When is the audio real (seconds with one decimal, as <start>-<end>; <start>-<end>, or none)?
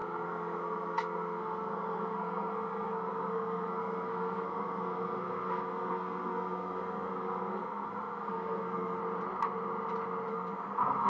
9.0-10.3